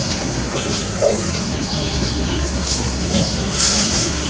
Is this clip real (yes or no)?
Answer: no